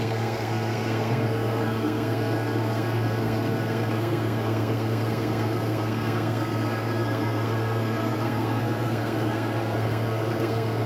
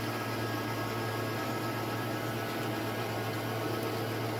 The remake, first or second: first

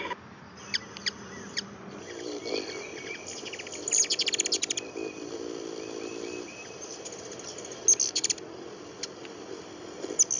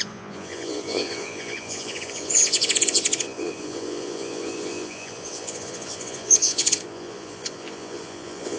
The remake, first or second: second